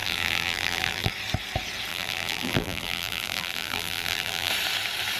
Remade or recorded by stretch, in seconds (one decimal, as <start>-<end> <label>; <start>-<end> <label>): 0.0-1.1 remade; 1.1-1.9 recorded; 1.9-4.5 remade; 4.5-5.2 recorded